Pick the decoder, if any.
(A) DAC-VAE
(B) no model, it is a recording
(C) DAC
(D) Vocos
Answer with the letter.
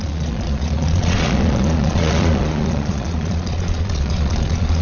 D